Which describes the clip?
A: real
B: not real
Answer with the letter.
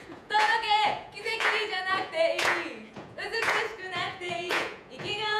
B